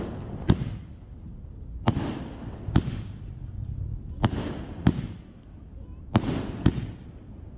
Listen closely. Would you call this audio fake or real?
real